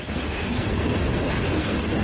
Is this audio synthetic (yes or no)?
yes